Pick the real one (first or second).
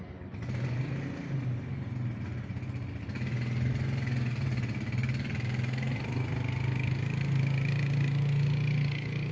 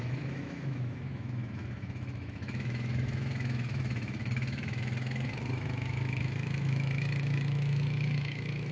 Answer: first